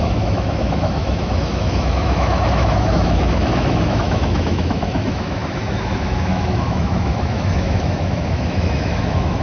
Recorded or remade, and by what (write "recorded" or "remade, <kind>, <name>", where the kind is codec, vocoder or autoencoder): remade, autoencoder, DAC-VAE